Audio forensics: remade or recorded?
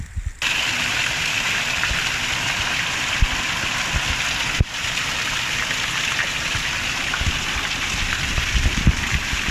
recorded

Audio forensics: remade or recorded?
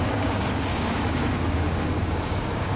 remade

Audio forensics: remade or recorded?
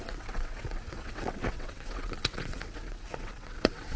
remade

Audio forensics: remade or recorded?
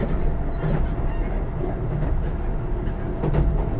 recorded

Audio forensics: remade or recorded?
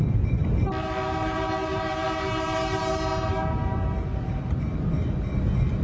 recorded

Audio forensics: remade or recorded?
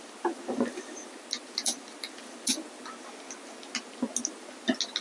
recorded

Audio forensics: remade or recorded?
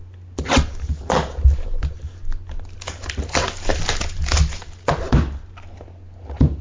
recorded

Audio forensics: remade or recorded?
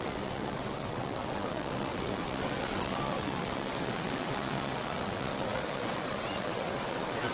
remade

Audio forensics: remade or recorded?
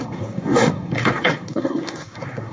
remade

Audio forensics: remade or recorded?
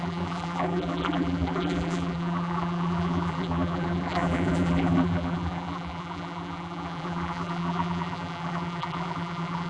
remade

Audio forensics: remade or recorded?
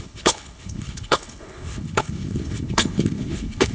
remade